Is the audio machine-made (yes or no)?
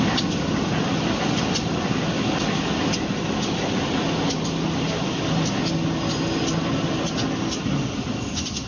no